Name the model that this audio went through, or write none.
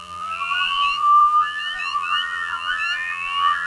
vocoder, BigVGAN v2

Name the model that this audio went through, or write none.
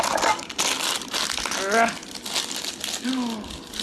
none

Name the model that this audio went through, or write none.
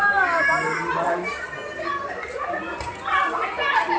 none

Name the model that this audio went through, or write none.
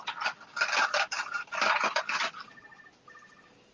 vocoder, BigVGAN v2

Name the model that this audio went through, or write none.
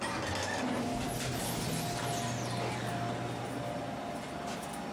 none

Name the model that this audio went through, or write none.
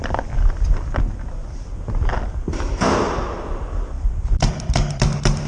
vocoder, BigVGAN v2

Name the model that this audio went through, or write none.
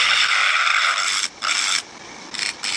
vocoder, BigVGAN v2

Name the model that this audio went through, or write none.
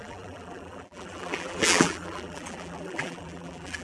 vocoder, BigVGAN v2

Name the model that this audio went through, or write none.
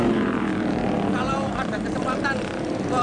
vocoder, BigVGAN v2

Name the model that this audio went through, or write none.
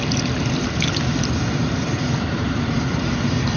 vocoder, BigVGAN v2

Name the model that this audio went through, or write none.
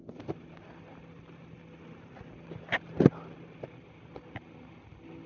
none